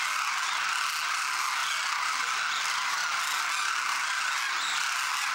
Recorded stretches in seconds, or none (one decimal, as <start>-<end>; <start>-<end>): 0.0-5.3